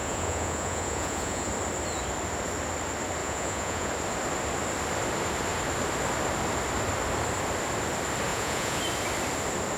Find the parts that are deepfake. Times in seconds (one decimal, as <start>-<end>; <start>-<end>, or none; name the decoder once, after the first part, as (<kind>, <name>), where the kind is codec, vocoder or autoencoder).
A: 0.0-1.5 (vocoder, Vocos); 3.2-3.9; 8.3-8.8